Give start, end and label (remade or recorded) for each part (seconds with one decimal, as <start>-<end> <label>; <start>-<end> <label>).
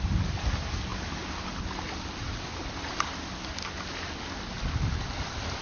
0.0-5.6 recorded